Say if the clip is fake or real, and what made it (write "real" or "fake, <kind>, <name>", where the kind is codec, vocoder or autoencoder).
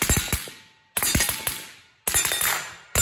real